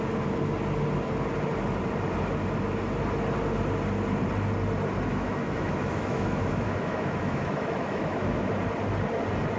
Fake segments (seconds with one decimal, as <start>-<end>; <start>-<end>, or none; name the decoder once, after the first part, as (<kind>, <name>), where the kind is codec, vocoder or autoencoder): 5.1-8.5 (autoencoder, DAC-VAE)